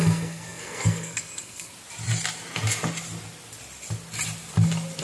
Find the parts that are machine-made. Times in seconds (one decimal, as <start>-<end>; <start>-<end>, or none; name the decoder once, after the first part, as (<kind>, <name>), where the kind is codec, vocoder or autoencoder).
0.0-1.7 (codec, SNAC)